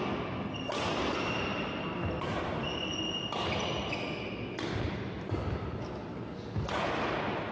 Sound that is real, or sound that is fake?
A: real